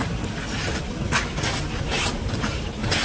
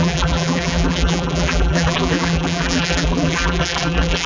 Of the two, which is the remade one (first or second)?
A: second